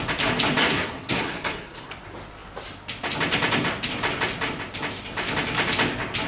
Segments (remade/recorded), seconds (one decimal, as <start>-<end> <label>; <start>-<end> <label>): 0.0-0.6 recorded; 0.6-1.9 remade; 1.9-6.3 recorded